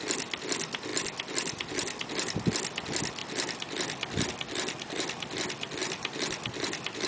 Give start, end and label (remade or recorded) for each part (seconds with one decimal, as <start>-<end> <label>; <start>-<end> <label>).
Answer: 0.0-5.8 recorded; 5.8-7.1 remade